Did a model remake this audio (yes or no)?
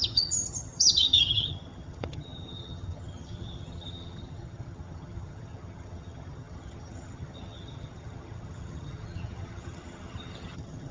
yes